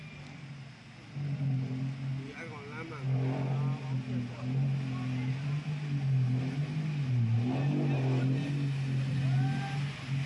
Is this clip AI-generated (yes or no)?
no